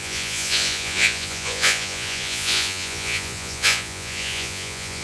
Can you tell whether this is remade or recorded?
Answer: remade